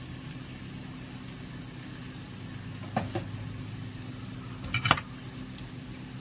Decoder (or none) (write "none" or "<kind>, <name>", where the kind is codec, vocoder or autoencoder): none